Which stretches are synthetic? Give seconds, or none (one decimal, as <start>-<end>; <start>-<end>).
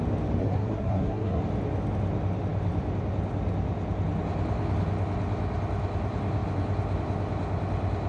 0.4-1.4